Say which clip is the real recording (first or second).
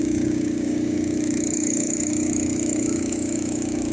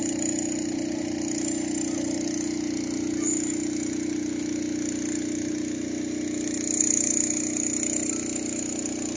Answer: second